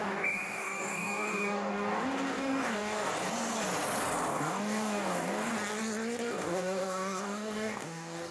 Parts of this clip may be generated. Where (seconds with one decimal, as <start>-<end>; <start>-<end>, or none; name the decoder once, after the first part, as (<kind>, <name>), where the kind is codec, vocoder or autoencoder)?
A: 0.0-3.1 (codec, DAC); 4.3-5.5; 6.3-8.3